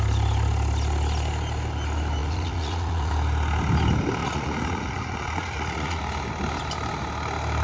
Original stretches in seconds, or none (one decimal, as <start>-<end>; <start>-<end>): 0.0-2.2; 3.1-4.2; 6.0-7.6